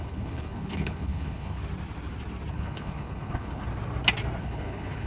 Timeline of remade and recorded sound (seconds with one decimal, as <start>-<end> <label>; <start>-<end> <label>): 0.0-1.6 remade; 1.6-2.5 recorded; 2.5-3.6 remade; 3.6-4.4 recorded; 4.4-5.1 remade